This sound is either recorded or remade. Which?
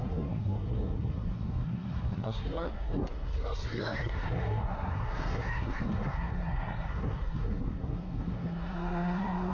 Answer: remade